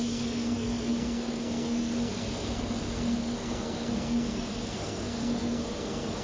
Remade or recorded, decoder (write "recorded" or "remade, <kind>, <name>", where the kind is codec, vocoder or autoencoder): remade, codec, SNAC